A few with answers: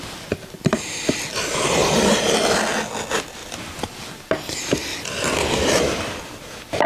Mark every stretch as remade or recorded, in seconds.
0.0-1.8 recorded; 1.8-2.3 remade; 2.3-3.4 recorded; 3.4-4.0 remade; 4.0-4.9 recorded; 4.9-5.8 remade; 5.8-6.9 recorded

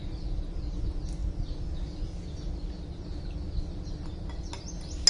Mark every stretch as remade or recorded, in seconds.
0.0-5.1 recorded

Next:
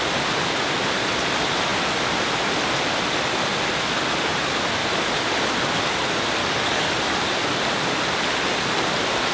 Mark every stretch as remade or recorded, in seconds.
0.0-6.4 recorded; 6.4-6.9 remade; 6.9-9.3 recorded